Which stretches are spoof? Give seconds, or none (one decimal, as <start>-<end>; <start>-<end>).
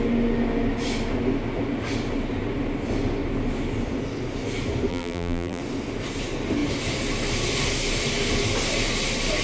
4.9-5.6